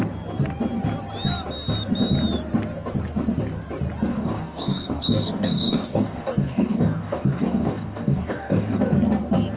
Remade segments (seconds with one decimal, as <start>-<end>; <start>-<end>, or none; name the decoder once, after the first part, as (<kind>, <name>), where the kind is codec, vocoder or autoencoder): 4.1-8.8 (codec, DAC)